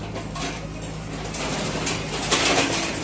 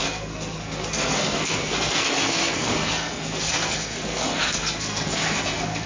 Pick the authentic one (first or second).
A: first